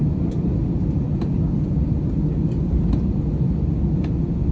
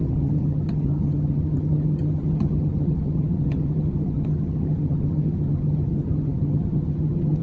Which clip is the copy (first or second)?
second